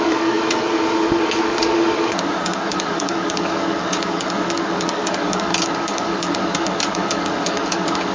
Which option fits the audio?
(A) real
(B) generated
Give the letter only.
B